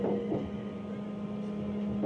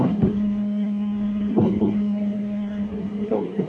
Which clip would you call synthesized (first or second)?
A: second